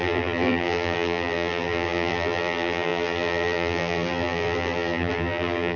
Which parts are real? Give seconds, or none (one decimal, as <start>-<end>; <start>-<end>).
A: none